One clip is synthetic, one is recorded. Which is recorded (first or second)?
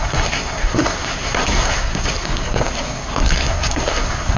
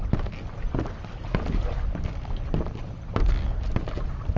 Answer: second